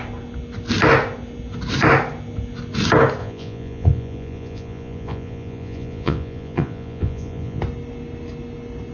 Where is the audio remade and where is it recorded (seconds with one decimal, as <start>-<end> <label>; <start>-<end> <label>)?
0.0-3.2 recorded; 3.2-7.6 remade; 7.6-8.9 recorded